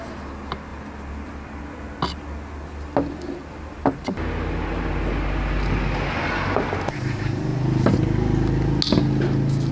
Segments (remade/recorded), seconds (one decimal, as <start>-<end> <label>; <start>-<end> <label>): 0.0-9.7 recorded